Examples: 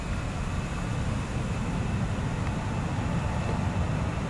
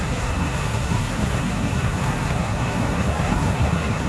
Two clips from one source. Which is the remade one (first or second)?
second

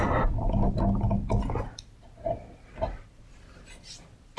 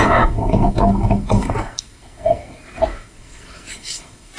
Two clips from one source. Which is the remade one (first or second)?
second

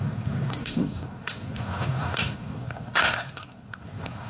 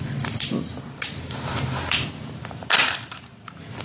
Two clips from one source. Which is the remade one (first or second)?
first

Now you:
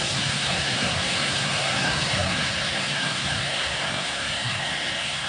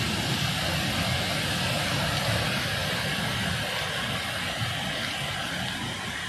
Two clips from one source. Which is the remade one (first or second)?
first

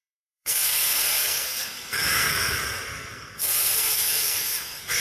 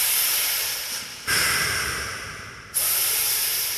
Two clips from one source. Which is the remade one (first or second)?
first